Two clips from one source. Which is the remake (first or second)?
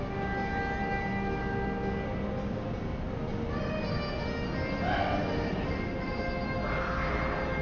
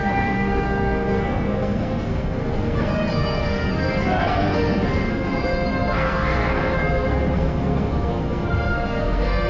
second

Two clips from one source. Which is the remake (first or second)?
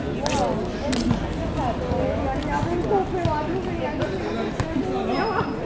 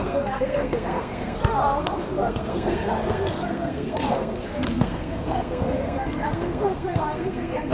second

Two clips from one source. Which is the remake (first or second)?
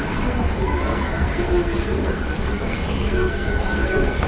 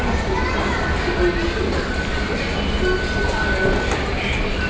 first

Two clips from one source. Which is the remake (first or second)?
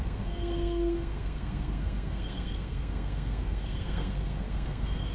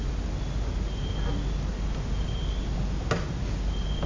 first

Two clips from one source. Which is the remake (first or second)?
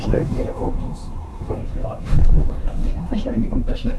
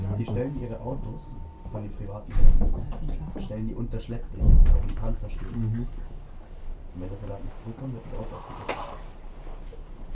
first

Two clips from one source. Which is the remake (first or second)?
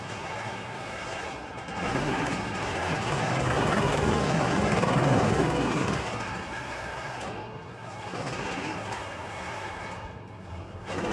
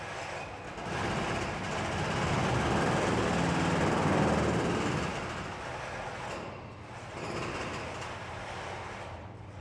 first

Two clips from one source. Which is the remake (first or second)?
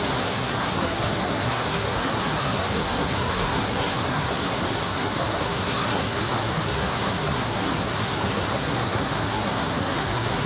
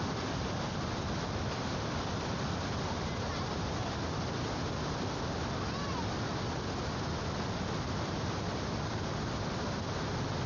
first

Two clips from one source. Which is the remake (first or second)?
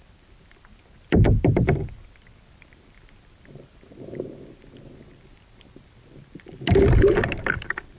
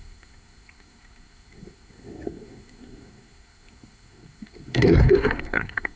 second